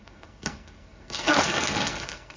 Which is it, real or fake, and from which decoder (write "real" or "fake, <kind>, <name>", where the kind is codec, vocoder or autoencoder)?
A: fake, codec, SNAC